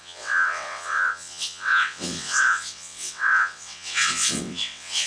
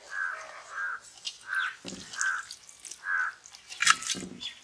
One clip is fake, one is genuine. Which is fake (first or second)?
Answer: first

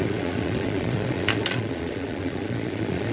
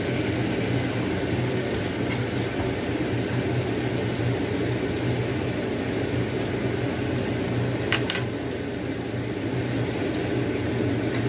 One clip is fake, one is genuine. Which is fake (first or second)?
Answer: first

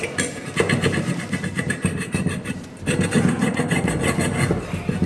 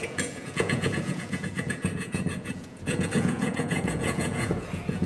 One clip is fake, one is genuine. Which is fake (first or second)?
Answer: second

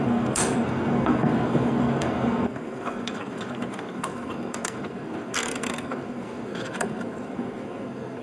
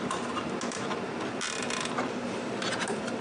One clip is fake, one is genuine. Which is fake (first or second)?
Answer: first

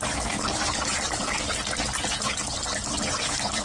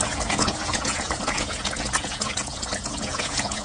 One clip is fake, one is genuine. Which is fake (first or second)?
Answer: second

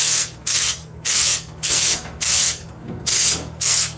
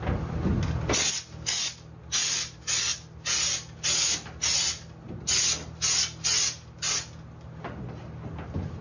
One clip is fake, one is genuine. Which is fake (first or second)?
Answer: first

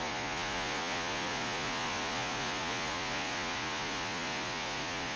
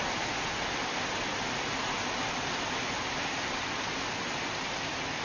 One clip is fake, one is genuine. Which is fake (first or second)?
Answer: first